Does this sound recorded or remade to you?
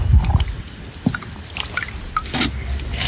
recorded